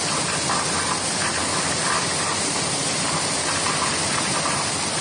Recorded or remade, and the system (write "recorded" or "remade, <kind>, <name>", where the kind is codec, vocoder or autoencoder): recorded